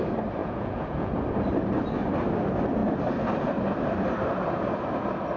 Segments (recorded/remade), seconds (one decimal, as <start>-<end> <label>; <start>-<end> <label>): 0.0-0.4 recorded; 0.4-1.1 remade; 1.1-5.4 recorded